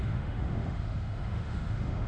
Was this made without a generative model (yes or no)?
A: no